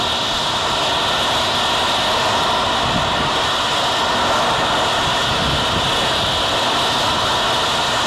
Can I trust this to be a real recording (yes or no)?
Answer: yes